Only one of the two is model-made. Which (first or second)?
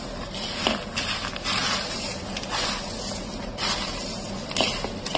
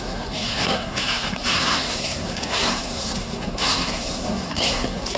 second